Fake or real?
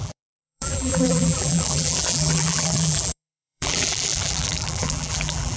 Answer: fake